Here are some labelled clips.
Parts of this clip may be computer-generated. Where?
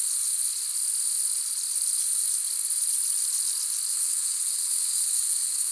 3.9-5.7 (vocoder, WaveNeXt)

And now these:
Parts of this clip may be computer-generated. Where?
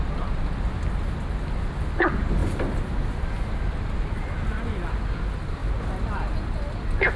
none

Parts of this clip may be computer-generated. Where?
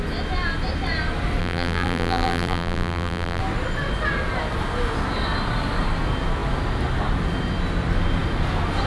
1.4-3.4 (vocoder, BigVGAN v2)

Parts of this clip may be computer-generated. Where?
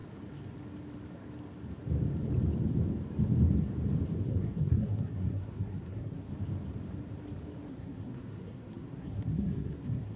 4.3-6.3 (codec, SNAC); 7.7-10.2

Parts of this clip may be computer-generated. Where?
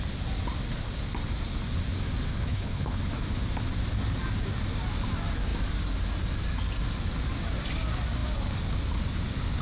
2.3-3.0 (codec, HILCodec)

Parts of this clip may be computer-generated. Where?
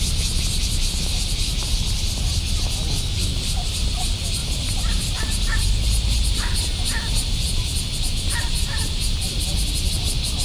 4.4-5.6 (vocoder, BigVGAN v2)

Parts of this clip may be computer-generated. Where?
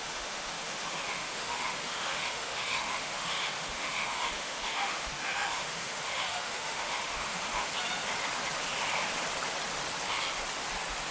0.0-7.7 (autoencoder, DAC-VAE)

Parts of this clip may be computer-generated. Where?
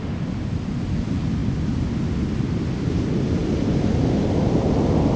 none